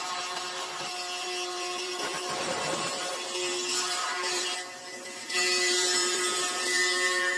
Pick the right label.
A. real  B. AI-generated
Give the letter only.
B